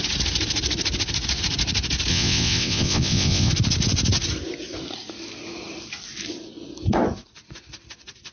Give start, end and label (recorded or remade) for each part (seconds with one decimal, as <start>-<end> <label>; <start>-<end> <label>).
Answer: 0.0-2.1 recorded; 2.1-3.5 remade; 3.5-8.3 recorded